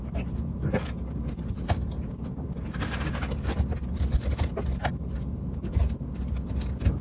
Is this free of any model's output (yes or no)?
yes